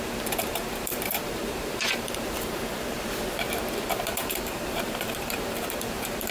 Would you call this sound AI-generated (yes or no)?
yes